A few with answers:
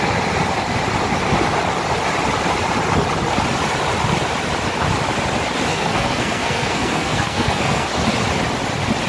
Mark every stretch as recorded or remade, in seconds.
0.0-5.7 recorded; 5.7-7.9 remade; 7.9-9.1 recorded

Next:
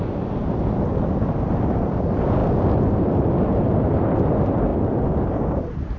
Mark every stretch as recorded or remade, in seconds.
0.0-6.0 recorded

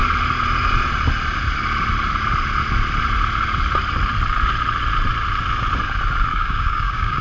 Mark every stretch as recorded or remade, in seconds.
0.0-6.3 recorded; 6.3-7.2 remade

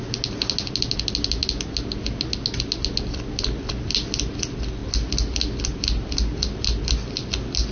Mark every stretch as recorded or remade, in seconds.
0.0-7.7 recorded